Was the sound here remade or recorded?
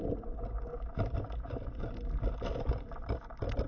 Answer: recorded